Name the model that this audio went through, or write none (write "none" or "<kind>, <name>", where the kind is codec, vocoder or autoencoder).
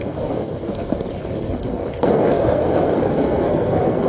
codec, SNAC